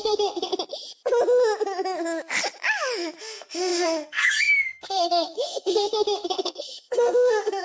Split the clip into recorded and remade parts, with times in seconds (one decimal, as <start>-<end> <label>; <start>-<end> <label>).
0.0-0.5 remade; 0.5-3.2 recorded; 3.2-7.6 remade